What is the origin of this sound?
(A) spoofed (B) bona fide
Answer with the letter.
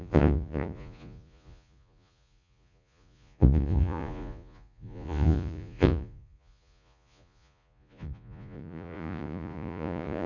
A